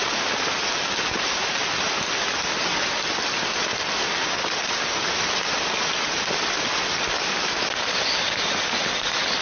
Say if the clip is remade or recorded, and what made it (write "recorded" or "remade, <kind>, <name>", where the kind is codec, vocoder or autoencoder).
recorded